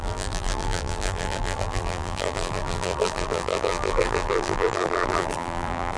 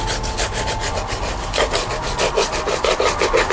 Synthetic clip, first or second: first